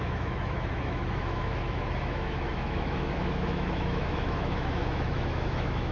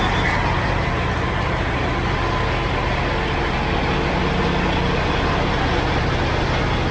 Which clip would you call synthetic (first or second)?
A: first